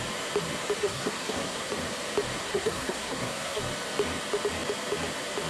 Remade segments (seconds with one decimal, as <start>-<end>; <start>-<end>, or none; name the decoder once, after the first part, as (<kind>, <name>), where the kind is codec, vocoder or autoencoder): 0.8-1.7 (codec, SNAC); 2.4-3.6